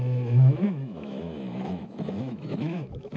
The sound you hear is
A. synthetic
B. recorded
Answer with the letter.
A